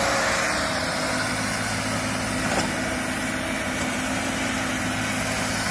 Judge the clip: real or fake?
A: real